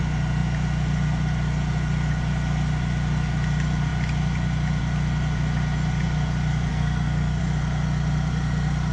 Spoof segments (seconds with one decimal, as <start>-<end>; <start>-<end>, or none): 6.7-7.4